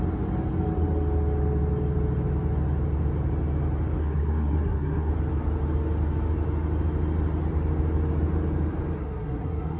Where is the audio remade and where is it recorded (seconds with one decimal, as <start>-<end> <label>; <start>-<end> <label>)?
0.0-4.0 recorded; 4.0-5.1 remade; 5.1-9.0 recorded; 9.0-9.8 remade